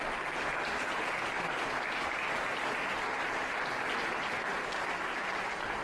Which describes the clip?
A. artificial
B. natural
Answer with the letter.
B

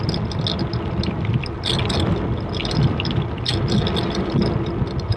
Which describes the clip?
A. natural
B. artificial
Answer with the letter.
A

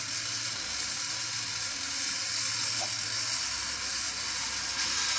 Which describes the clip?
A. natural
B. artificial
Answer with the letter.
A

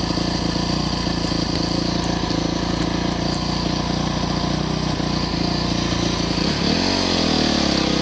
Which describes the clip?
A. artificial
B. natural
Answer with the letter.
B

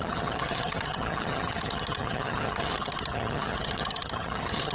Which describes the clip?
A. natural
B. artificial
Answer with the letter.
B